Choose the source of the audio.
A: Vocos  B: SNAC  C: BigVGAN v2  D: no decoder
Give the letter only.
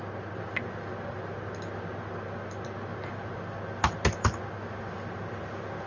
D